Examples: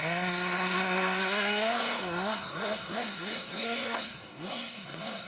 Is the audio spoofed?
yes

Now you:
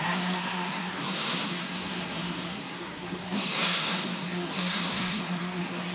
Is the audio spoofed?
yes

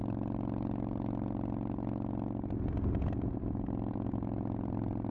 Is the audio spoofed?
no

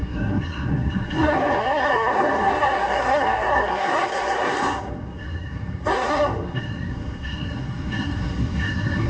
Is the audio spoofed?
yes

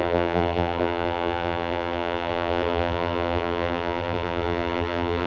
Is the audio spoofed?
yes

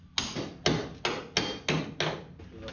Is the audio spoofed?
no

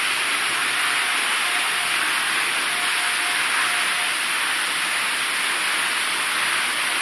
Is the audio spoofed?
no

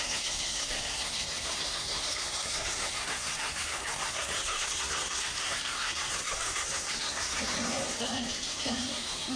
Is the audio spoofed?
yes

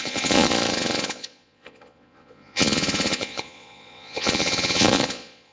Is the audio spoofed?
yes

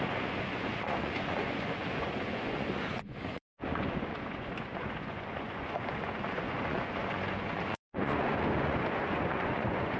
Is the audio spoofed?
yes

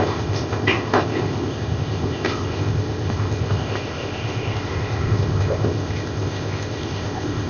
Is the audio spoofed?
yes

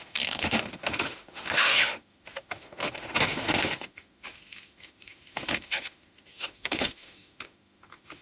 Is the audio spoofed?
yes